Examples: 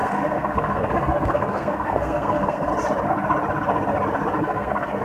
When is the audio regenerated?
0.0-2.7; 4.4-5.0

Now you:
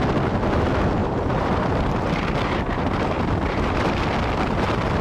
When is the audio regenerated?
1.0-4.0

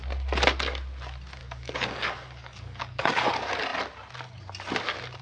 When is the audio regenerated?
1.4-3.3

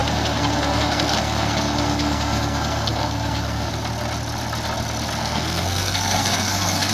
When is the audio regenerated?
0.0-3.7; 5.2-6.9

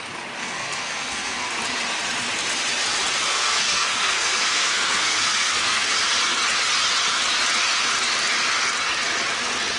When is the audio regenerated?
0.4-1.5; 3.3-5.9

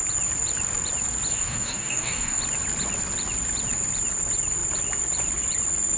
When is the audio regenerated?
1.3-2.4

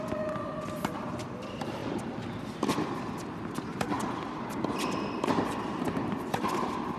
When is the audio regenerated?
none